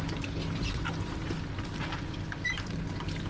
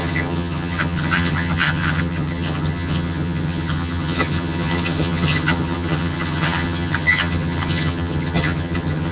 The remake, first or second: second